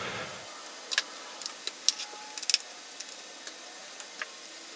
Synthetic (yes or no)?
no